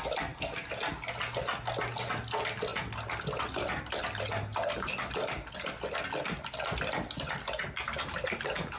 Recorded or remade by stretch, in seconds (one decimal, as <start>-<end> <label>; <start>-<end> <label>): 0.0-8.8 recorded